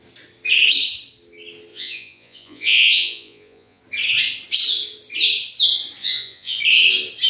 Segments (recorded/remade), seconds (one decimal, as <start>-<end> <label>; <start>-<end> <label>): 0.0-1.7 recorded; 1.7-3.8 remade; 3.8-6.0 recorded; 6.0-6.6 remade; 6.6-7.3 recorded

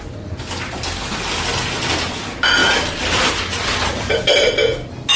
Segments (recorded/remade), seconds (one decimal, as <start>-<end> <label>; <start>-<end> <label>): 0.0-5.2 recorded

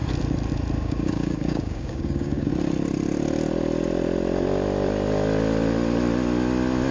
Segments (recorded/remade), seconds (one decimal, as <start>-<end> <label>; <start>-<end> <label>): 0.0-0.8 recorded; 0.8-2.5 remade; 2.5-6.9 recorded

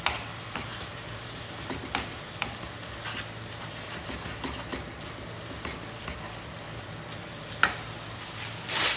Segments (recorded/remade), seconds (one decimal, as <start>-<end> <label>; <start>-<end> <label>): 0.0-0.7 recorded; 0.7-1.4 remade; 1.4-9.0 recorded